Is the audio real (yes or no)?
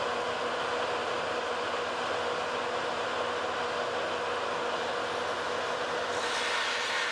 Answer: yes